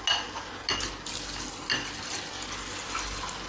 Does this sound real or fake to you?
real